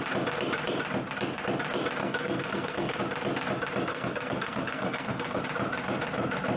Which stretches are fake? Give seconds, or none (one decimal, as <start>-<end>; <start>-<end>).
2.0-3.0; 3.9-5.4